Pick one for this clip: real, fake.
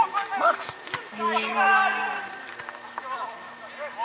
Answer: real